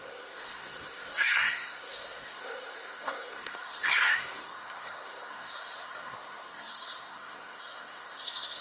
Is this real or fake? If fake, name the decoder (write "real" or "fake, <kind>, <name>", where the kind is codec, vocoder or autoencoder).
fake, codec, SNAC